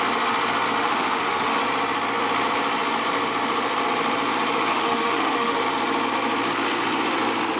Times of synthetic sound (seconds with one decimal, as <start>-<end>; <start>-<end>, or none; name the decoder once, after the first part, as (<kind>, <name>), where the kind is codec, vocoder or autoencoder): 0.8-1.6 (autoencoder, DAC-VAE); 4.7-5.6